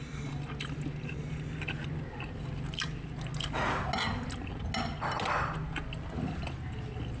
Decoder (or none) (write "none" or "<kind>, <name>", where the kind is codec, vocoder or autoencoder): none